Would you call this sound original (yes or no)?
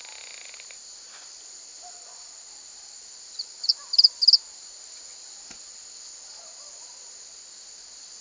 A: yes